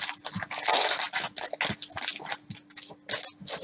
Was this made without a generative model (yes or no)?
yes